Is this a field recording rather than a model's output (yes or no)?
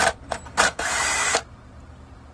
no